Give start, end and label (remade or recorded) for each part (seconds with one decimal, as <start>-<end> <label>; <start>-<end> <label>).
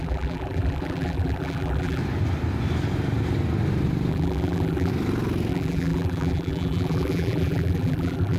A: 0.0-2.0 remade; 2.0-4.1 recorded; 4.1-4.9 remade; 4.9-5.5 recorded; 5.5-8.4 remade